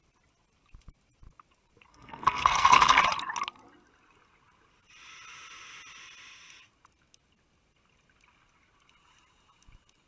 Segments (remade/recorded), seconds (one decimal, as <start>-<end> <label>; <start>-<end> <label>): 0.0-1.9 recorded; 1.9-3.0 remade; 3.0-10.1 recorded